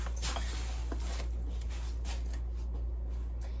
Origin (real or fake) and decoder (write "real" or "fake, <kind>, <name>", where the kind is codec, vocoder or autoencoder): real